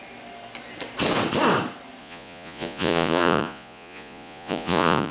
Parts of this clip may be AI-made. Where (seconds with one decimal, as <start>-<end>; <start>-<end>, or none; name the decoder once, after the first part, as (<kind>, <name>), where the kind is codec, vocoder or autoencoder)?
2.0-5.1 (vocoder, Vocos)